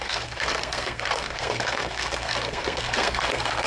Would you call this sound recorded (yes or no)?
no